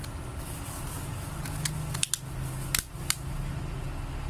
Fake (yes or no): no